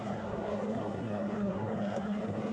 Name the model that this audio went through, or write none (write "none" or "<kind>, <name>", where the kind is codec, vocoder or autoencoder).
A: codec, SNAC